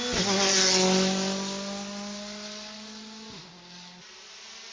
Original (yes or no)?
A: yes